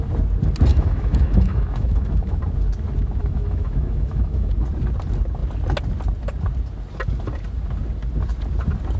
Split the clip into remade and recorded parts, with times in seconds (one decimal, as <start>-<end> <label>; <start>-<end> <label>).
0.0-0.7 recorded; 0.7-2.4 remade; 2.4-3.2 recorded; 3.2-4.5 remade; 4.5-9.0 recorded